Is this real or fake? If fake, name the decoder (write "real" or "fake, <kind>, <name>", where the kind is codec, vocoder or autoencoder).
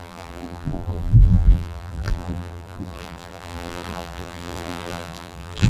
fake, vocoder, BigVGAN v2